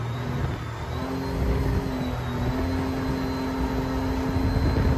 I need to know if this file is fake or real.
real